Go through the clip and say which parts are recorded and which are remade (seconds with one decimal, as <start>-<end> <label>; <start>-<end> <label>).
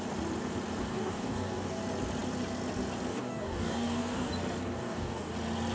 0.0-0.9 recorded; 0.9-1.8 remade; 1.8-3.1 recorded; 3.1-4.3 remade; 4.3-4.8 recorded; 4.8-5.3 remade; 5.3-5.7 recorded